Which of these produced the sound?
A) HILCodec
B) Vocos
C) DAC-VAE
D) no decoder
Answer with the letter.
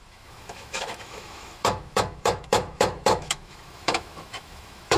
C